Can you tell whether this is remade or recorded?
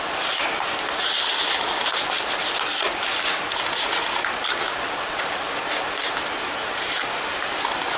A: recorded